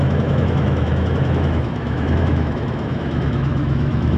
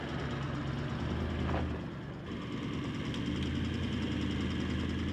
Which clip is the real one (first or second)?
second